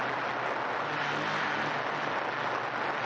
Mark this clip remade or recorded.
recorded